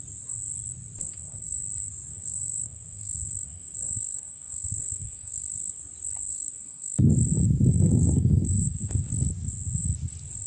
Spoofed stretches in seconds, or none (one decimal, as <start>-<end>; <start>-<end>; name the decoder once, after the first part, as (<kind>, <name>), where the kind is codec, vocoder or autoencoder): 1.0-1.6 (codec, SNAC); 2.1-5.8; 6.3-7.1; 7.7-9.1